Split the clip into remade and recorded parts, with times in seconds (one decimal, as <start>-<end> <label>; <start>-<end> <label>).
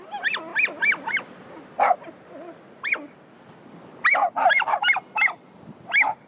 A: 0.0-6.3 recorded